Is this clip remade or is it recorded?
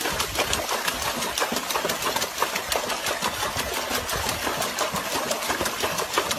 recorded